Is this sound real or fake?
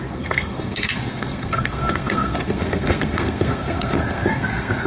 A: fake